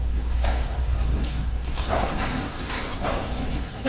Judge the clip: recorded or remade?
remade